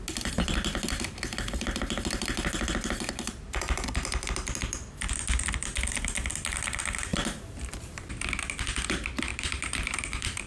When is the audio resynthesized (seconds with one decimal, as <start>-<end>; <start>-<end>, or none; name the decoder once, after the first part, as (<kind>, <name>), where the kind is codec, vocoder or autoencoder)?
9.3-10.5 (vocoder, BigVGAN v2)